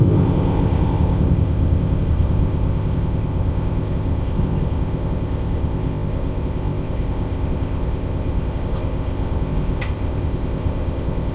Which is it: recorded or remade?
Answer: remade